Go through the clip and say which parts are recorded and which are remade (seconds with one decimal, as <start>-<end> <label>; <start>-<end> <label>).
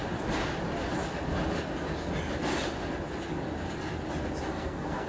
0.0-4.5 recorded; 4.5-5.1 remade